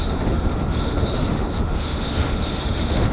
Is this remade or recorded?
remade